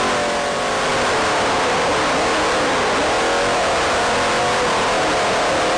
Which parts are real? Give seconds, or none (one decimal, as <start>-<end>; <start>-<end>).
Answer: 0.0-5.8

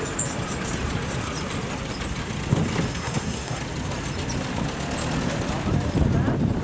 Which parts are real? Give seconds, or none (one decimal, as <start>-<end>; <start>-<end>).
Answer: 0.0-2.9; 3.6-6.6

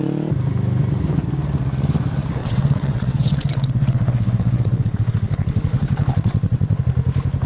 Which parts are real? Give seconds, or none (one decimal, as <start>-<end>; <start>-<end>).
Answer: 0.0-2.4; 6.8-7.5

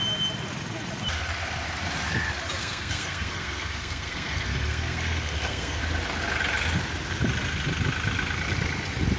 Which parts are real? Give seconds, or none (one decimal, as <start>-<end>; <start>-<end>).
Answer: 0.0-2.6; 5.8-9.2

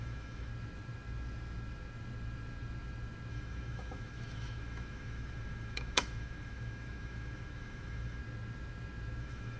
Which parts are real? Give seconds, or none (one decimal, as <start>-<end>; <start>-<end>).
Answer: 0.5-3.3; 8.2-9.2